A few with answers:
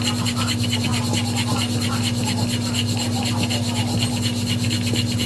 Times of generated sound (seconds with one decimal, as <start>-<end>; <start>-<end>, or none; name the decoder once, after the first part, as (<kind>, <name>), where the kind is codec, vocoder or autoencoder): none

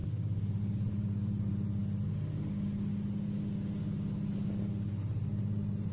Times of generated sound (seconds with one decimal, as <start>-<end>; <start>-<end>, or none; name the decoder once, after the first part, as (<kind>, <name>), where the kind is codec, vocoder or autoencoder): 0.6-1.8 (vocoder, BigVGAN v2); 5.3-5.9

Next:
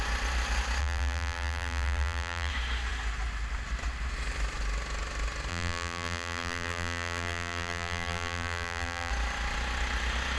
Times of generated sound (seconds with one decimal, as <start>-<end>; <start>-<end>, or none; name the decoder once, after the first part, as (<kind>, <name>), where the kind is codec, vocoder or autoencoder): 0.8-2.5 (vocoder, BigVGAN v2); 5.5-9.1